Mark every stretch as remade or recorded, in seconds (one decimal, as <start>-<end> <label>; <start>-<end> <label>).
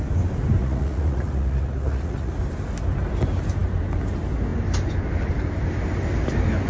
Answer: 0.0-0.6 recorded; 0.6-2.3 remade; 2.3-6.7 recorded